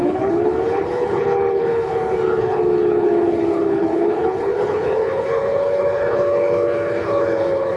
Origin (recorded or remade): remade